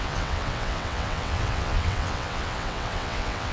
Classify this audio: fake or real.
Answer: fake